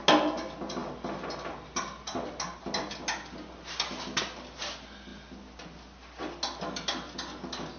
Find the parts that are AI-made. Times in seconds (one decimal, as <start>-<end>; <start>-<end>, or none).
none